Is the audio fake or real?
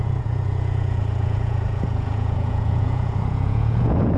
fake